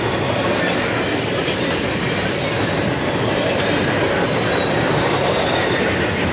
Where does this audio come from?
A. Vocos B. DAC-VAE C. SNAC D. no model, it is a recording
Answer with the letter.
D